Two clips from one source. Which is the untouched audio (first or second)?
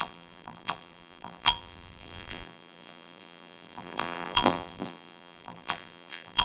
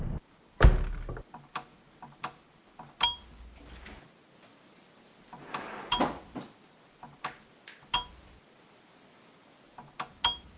second